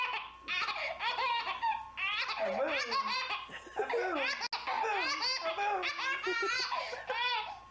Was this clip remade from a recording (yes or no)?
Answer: no